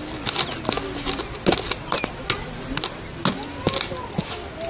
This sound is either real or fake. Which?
real